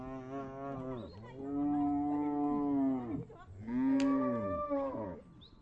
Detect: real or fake real